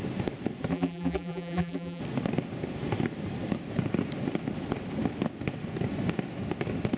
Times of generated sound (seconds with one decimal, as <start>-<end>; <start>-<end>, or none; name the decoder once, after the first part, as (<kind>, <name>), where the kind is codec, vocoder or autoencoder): 0.7-2.0 (vocoder, BigVGAN v2)